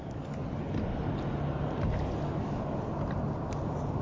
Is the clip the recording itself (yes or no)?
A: yes